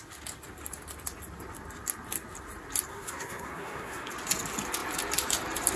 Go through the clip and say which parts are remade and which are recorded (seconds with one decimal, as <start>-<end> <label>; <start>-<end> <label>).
0.0-2.9 recorded; 2.9-4.1 remade; 4.1-5.8 recorded